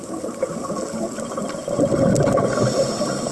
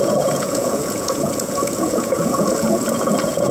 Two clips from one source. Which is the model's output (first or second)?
second